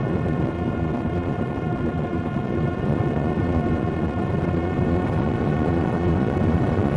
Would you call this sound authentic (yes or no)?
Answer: no